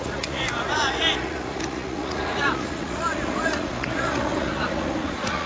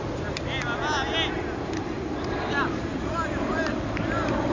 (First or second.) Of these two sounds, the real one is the second